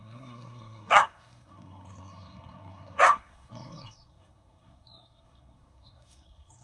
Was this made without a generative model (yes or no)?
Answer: no